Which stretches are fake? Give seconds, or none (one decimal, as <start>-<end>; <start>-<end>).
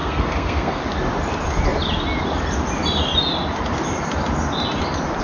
0.0-0.8